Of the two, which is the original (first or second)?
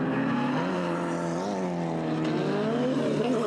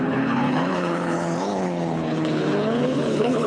first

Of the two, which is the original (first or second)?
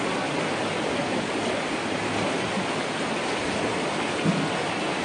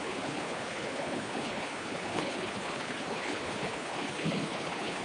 first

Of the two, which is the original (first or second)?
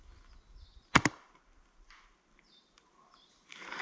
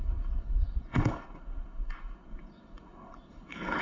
first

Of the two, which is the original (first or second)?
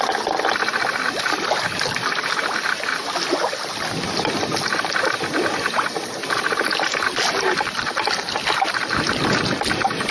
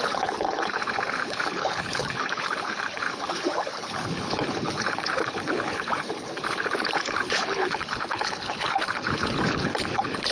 first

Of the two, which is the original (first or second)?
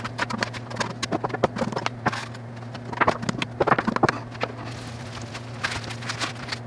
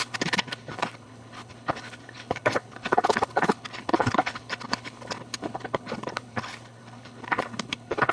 first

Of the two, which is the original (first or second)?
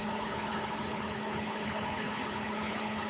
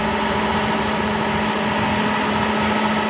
second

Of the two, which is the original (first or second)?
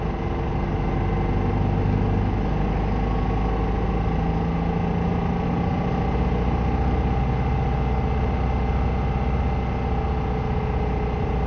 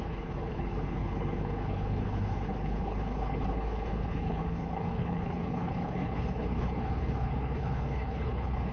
first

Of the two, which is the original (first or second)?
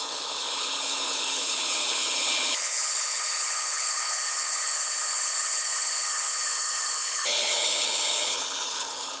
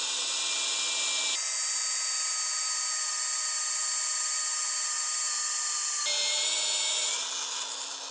second